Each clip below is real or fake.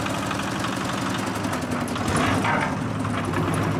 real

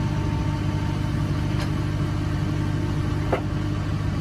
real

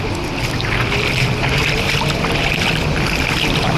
fake